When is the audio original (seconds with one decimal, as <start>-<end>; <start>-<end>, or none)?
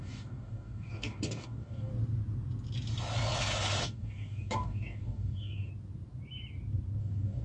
1.9-3.8; 5.7-7.0